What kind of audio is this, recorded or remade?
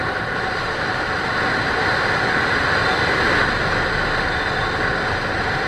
recorded